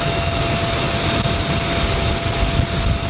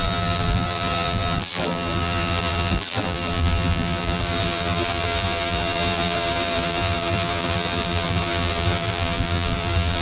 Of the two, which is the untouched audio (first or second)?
first